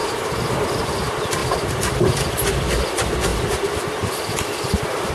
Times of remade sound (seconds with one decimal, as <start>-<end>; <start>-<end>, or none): 0.0-0.5; 1.4-2.3; 3.3-5.1